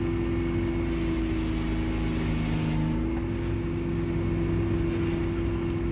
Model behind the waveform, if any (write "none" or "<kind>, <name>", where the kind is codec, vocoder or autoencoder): none